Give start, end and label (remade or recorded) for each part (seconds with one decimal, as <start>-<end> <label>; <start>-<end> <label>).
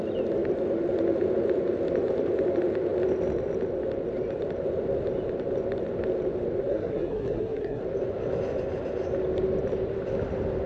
0.0-6.7 recorded; 6.7-7.8 remade; 7.8-10.7 recorded